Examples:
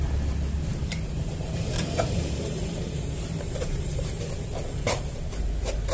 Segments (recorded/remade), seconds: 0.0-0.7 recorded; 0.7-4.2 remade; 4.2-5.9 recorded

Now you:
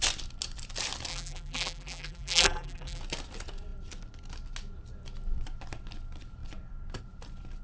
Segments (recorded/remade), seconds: 0.0-1.1 recorded; 1.1-3.0 remade; 3.0-7.6 recorded

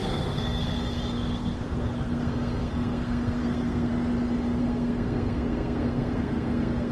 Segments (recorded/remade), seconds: 0.0-3.9 remade; 3.9-4.6 recorded; 4.6-6.9 remade

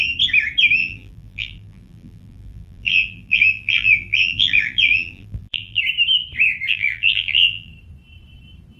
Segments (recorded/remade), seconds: 0.0-0.8 recorded; 0.8-5.8 remade; 5.8-6.7 recorded; 6.7-7.7 remade; 7.7-8.8 recorded

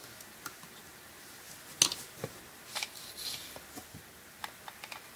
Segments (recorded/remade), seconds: 0.0-5.2 recorded